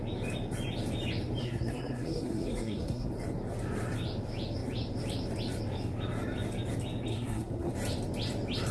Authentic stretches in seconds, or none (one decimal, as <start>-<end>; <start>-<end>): 0.0-1.4; 3.1-7.1; 7.7-8.7